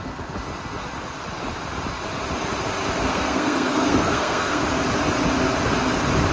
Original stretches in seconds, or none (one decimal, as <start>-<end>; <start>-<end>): 0.0-3.1; 4.6-6.3